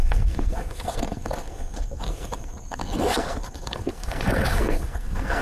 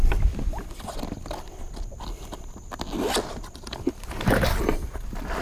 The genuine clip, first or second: second